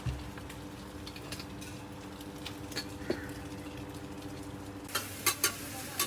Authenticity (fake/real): real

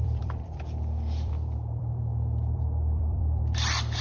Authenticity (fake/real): fake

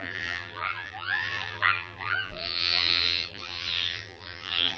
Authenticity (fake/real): fake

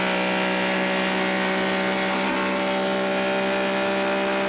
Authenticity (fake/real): real